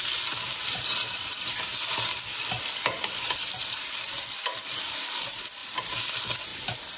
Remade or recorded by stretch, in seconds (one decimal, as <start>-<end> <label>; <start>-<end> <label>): 0.0-1.7 remade; 1.7-2.6 recorded; 2.6-6.5 remade; 6.5-7.0 recorded